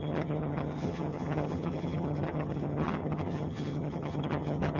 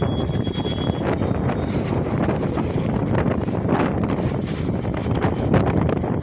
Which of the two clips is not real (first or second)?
first